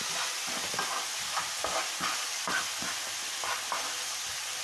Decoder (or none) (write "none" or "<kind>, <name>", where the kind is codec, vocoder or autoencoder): none